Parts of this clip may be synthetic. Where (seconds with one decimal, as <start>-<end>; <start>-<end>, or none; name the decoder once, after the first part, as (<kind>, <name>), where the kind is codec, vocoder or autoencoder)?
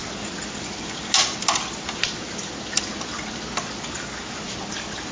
none